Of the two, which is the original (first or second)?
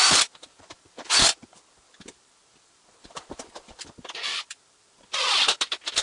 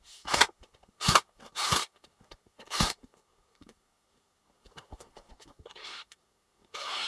first